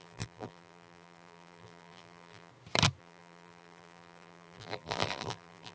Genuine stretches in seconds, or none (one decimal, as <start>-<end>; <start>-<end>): 2.5-3.0